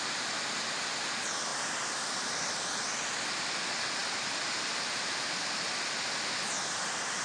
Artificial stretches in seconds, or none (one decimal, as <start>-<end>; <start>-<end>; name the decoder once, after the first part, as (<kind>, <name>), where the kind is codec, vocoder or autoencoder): none